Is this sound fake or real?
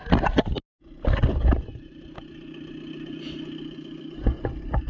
real